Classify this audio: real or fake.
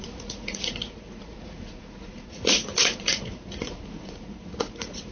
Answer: fake